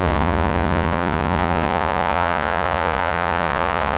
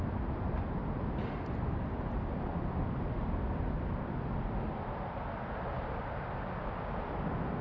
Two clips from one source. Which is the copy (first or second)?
first